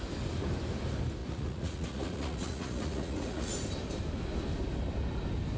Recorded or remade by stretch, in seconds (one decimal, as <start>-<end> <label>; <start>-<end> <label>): 0.0-1.2 recorded; 1.2-3.5 remade; 3.5-5.6 recorded

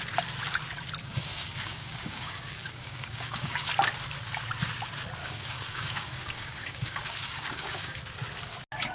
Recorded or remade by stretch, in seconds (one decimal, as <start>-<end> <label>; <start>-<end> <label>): 0.0-1.0 recorded; 1.0-3.7 remade; 3.7-5.2 recorded; 5.2-8.0 remade; 8.0-8.9 recorded

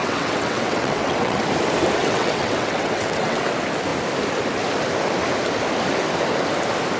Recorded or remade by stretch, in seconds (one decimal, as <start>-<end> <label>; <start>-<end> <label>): 0.0-1.4 remade; 1.4-2.0 recorded; 2.0-3.5 remade; 3.5-7.0 recorded

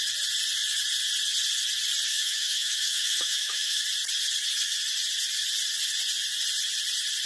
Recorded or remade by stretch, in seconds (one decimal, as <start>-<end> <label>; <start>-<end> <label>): 0.0-2.1 recorded; 2.1-3.8 remade; 3.8-7.3 recorded